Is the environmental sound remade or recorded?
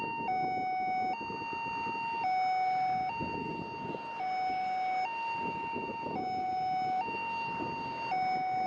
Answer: recorded